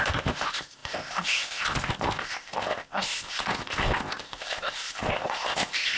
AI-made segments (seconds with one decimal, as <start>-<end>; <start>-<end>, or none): 0.0-6.0